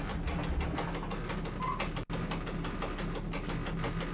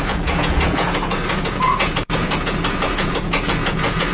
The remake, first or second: second